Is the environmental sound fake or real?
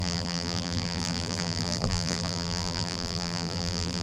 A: fake